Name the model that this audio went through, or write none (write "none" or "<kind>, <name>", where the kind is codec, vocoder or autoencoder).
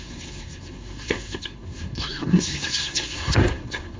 codec, SNAC